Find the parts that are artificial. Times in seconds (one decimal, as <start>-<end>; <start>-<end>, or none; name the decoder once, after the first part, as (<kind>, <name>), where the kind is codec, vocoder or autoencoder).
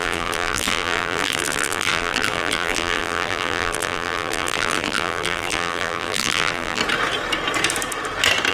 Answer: 0.0-6.8 (vocoder, BigVGAN v2)